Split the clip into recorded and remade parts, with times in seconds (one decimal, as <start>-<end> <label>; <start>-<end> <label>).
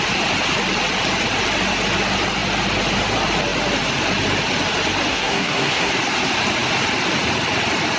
0.0-5.1 recorded; 5.1-5.9 remade; 5.9-8.0 recorded